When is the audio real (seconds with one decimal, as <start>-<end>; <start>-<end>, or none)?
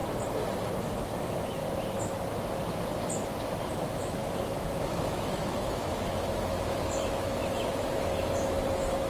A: 0.0-0.8; 1.6-3.7